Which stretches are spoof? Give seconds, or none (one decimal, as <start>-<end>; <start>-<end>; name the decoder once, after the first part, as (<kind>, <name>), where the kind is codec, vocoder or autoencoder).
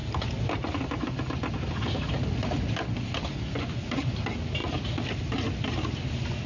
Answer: none